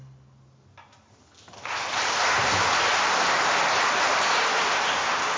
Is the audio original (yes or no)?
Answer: yes